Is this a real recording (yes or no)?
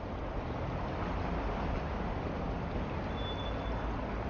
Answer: yes